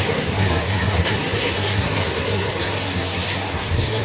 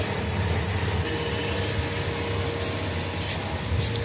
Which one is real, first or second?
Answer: second